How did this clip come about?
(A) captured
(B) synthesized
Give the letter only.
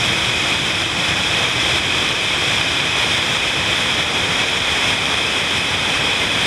B